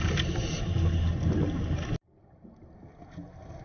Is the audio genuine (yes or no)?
yes